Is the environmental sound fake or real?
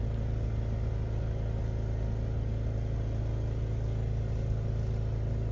real